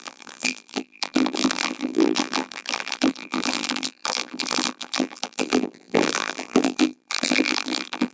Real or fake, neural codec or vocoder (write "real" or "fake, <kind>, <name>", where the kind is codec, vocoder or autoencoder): fake, vocoder, BigVGAN v2